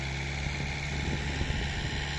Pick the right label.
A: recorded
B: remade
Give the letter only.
A